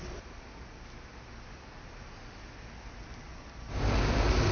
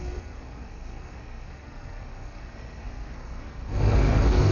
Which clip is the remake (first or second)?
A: second